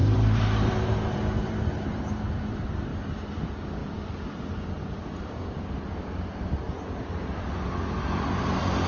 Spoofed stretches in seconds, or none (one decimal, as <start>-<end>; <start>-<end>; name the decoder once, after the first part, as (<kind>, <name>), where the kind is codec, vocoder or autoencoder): 0.0-2.4 (vocoder, BigVGAN v2)